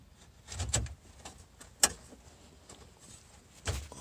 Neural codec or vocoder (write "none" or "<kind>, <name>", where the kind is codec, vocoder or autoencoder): none